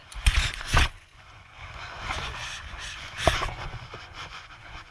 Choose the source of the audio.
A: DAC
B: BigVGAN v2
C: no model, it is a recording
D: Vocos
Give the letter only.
D